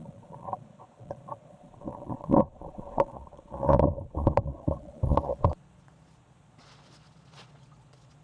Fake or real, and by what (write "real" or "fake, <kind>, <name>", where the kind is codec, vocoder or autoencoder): fake, vocoder, Vocos